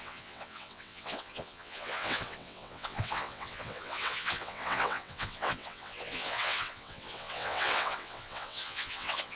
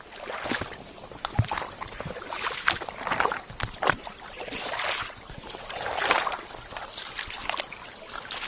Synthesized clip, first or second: first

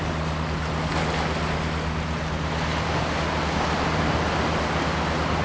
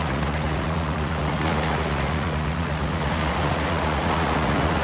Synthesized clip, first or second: second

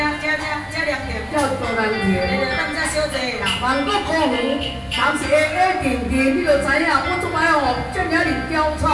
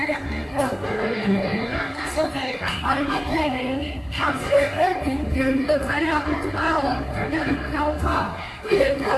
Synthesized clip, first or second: second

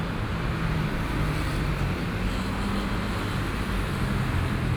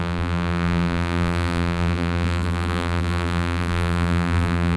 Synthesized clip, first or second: second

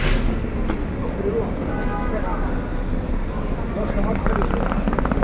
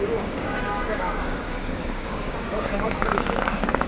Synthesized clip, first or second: second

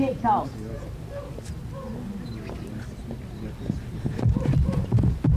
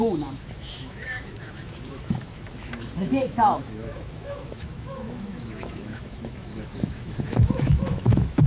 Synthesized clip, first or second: second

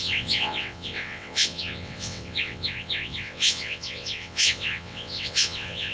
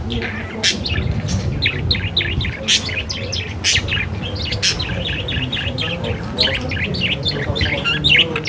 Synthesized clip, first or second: first